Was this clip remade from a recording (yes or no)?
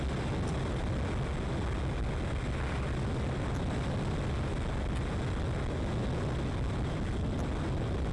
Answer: no